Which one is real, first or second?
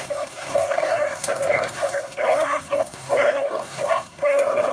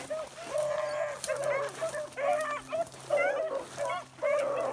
second